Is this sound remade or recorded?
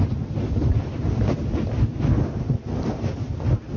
recorded